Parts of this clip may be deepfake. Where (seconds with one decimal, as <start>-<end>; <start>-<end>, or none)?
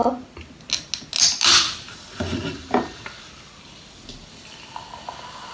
2.3-3.0